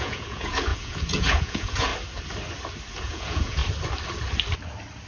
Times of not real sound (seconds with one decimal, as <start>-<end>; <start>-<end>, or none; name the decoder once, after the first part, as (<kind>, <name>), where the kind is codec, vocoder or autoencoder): 0.0-1.9 (vocoder, Vocos); 3.0-3.6